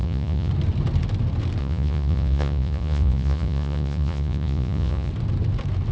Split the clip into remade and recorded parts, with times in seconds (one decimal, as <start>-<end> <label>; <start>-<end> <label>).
0.0-0.5 remade; 0.5-1.6 recorded; 1.6-5.1 remade; 5.1-5.9 recorded